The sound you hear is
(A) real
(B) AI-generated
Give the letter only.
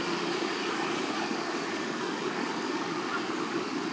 B